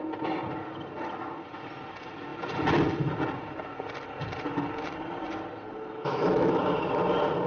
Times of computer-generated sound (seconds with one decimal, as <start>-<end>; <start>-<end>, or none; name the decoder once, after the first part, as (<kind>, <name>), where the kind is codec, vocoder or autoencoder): 6.0-6.6 (autoencoder, DAC-VAE)